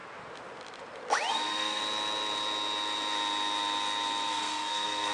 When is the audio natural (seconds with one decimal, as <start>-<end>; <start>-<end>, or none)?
0.0-1.3; 1.8-4.3